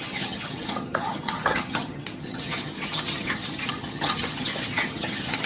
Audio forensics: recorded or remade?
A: remade